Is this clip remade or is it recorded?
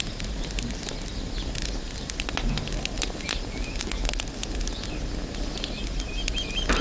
recorded